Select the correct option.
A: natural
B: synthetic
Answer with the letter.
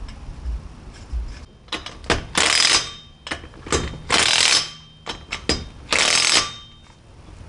A